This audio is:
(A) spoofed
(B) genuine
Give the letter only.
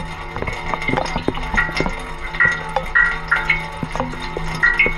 B